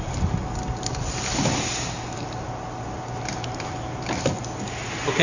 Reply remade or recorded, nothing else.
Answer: recorded